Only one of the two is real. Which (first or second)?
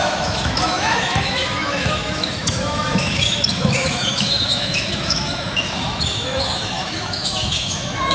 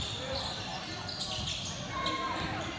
second